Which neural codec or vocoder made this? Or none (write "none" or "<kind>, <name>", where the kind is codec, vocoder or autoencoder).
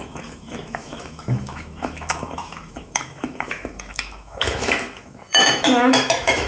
autoencoder, DAC-VAE